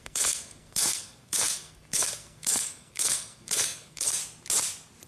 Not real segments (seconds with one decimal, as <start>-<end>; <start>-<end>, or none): 0.0-4.2